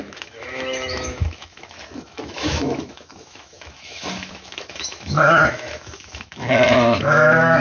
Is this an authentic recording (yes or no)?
no